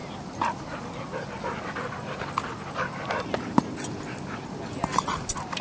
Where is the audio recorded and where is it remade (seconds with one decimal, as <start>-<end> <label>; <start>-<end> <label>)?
0.0-5.6 recorded